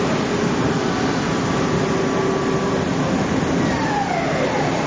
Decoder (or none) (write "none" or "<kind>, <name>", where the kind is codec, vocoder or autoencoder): none